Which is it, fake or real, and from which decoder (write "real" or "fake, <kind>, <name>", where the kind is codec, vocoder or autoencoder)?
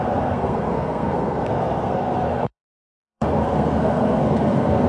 fake, codec, SNAC